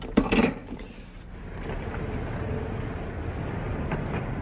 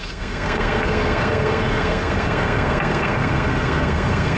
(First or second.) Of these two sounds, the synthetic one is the second